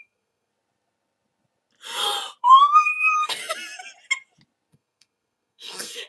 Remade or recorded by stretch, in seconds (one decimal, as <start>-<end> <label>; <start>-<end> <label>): 0.0-0.5 remade; 0.5-2.4 recorded; 2.4-3.4 remade; 3.4-4.7 recorded; 4.7-6.1 remade